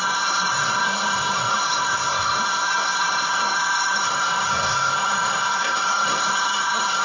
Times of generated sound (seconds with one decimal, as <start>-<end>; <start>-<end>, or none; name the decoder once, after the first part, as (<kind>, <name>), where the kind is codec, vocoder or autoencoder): 0.0-7.0 (codec, SNAC)